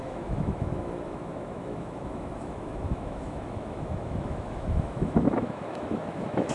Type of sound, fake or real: fake